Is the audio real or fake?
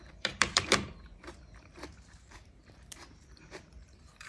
fake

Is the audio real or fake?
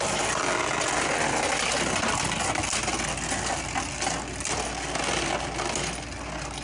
real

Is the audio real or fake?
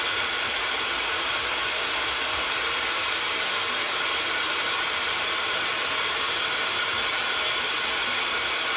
fake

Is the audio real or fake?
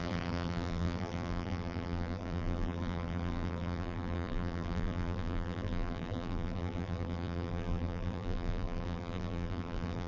fake